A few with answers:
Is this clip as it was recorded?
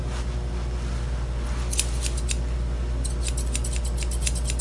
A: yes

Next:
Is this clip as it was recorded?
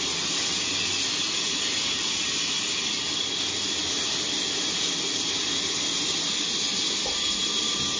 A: yes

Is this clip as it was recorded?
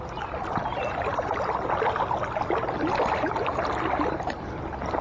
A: yes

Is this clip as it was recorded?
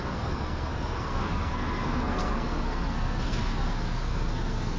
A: no